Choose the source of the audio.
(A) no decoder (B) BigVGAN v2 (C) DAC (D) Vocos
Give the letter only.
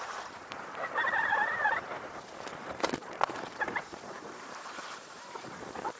B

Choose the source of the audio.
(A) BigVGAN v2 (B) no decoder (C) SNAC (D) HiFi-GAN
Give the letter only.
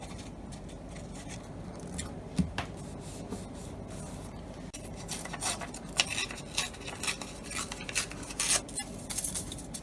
B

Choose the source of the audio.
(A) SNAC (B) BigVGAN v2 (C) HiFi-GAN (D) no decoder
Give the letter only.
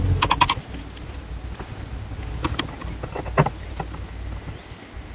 D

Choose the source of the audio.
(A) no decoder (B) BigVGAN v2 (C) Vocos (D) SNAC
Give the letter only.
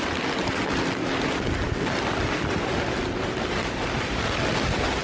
A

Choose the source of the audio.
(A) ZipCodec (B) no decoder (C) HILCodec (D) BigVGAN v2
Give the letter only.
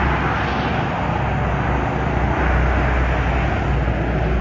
B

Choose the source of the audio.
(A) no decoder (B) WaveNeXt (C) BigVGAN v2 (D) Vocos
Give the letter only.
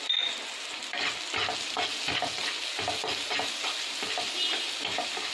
A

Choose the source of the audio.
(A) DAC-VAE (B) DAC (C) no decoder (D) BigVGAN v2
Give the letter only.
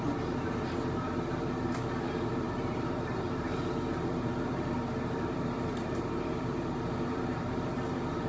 D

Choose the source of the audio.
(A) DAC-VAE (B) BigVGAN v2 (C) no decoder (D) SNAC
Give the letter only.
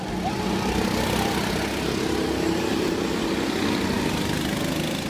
C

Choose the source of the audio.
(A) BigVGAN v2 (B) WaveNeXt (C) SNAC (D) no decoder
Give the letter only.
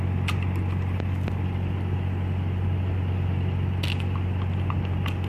D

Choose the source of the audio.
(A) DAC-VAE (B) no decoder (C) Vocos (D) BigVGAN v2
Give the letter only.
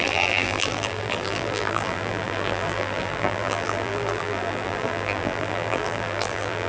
D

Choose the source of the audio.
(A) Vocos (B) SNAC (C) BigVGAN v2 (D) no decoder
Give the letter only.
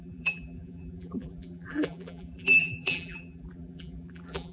C